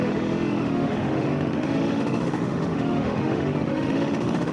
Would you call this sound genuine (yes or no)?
no